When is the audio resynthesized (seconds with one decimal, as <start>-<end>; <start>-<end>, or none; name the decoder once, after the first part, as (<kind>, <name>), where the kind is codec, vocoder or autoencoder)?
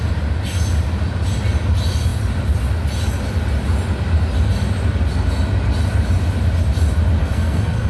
7.2-7.9 (codec, SNAC)